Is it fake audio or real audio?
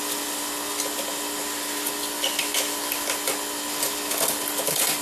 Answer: real